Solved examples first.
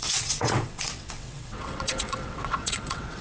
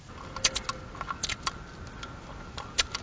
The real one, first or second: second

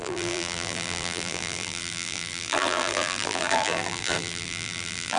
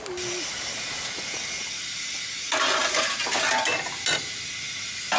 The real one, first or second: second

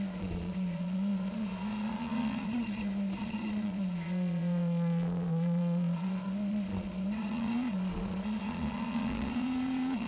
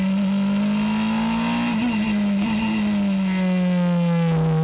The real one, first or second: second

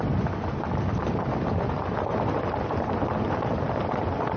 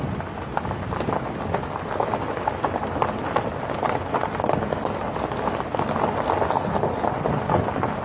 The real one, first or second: second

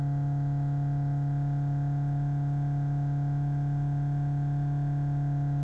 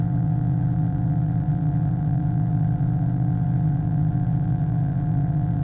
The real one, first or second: first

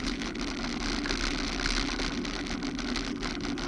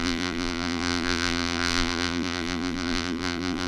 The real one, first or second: first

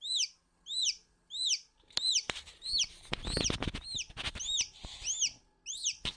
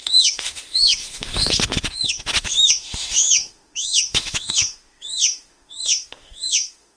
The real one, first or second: first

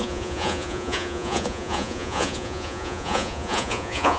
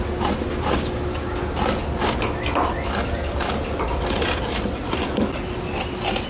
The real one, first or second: second